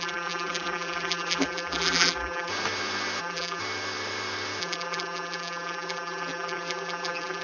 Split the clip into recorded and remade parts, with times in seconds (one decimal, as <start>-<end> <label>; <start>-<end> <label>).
0.0-2.5 remade; 2.5-3.2 recorded; 3.2-3.6 remade; 3.6-4.6 recorded; 4.6-7.4 remade